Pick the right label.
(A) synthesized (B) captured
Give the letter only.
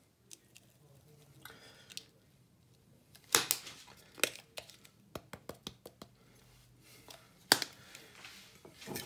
B